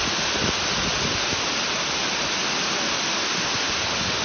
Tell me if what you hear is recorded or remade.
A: recorded